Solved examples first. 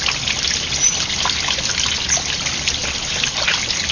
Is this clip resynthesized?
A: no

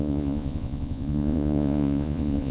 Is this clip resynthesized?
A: yes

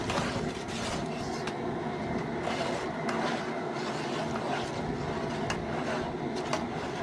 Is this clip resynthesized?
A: no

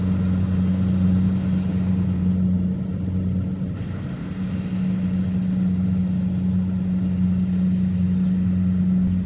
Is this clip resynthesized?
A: no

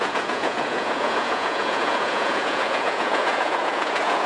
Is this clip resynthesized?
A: yes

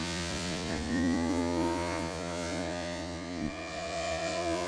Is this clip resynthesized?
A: yes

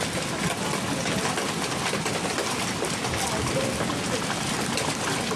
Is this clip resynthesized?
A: no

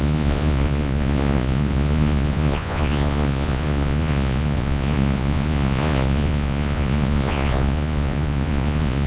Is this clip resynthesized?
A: yes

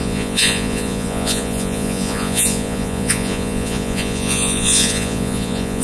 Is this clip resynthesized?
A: yes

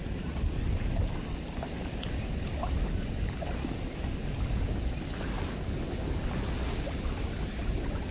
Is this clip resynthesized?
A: no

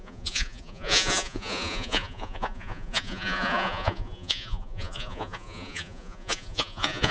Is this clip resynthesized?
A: yes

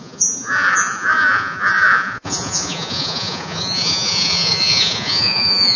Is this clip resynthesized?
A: yes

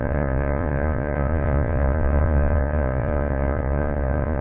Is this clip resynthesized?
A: yes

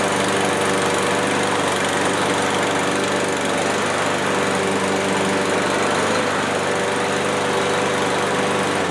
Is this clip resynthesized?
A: no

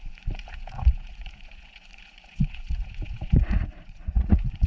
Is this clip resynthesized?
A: yes